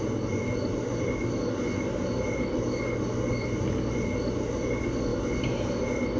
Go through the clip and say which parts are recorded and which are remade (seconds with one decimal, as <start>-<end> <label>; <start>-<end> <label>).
0.0-6.2 recorded

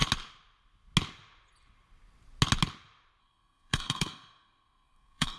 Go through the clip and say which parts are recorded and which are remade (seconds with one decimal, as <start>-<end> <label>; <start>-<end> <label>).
0.0-3.2 recorded; 3.2-5.4 remade

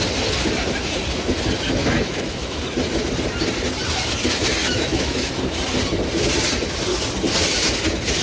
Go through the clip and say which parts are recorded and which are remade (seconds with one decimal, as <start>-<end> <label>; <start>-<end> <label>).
0.0-1.8 recorded; 1.8-2.6 remade; 2.6-4.6 recorded; 4.6-5.3 remade; 5.3-8.2 recorded

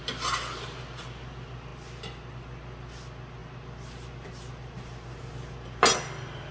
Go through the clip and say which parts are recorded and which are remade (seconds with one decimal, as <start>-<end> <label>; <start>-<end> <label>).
0.0-6.5 recorded

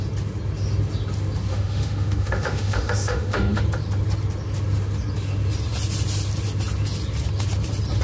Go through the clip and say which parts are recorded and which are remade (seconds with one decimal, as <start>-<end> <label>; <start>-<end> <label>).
0.0-1.5 recorded; 1.5-3.6 remade; 3.6-8.0 recorded

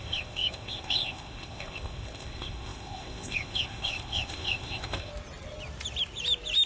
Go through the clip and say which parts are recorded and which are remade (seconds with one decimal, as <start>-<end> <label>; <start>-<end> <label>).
0.0-5.1 remade; 5.1-6.7 recorded